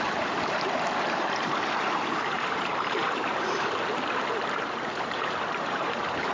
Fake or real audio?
fake